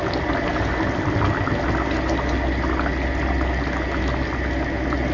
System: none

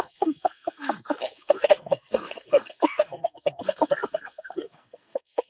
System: codec, SNAC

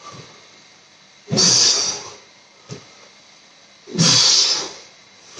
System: none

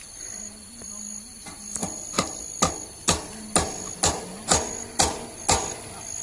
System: none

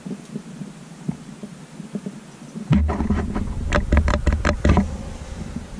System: none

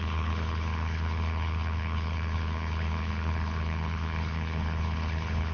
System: codec, HILCodec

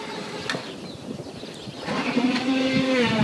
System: none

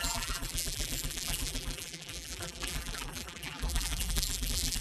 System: vocoder, BigVGAN v2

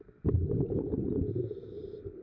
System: none